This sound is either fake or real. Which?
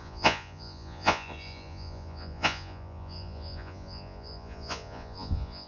fake